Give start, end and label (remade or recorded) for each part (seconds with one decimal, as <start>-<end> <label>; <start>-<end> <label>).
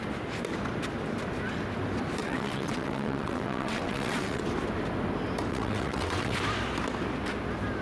0.0-2.2 recorded; 2.2-4.4 remade; 4.4-5.5 recorded; 5.5-6.4 remade; 6.4-7.8 recorded